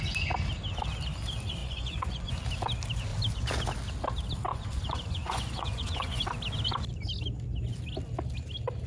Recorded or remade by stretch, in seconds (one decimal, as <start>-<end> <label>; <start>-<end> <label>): 0.0-1.6 recorded; 1.6-2.4 remade; 2.4-4.5 recorded; 4.5-6.2 remade; 6.2-8.9 recorded

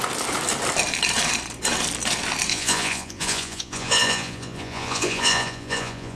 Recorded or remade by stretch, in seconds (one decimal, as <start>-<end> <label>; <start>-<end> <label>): 0.0-2.5 recorded; 2.5-6.2 remade

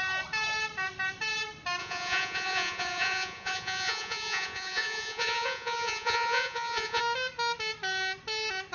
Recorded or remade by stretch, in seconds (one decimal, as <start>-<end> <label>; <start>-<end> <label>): 0.0-1.8 recorded; 1.8-7.0 remade; 7.0-8.7 recorded

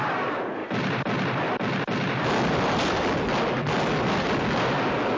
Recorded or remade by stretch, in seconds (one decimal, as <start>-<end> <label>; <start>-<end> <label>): 0.0-5.2 recorded

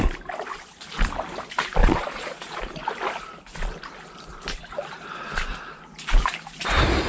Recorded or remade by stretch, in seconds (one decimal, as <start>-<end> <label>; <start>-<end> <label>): 0.0-1.8 recorded; 1.8-2.6 remade; 2.6-7.1 recorded

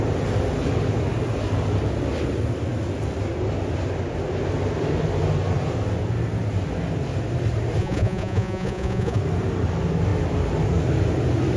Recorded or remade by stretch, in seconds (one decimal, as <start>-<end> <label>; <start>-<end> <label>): 0.0-7.8 recorded; 7.8-9.2 remade; 9.2-11.6 recorded

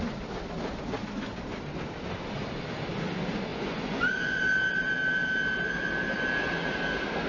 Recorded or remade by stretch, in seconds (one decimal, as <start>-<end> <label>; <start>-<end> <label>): 0.0-3.5 recorded; 3.5-4.4 remade; 4.4-7.3 recorded

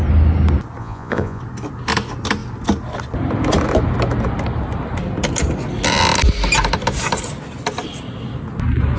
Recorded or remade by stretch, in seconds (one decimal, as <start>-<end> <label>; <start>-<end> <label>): 0.0-0.8 recorded; 0.8-1.4 remade; 1.4-9.0 recorded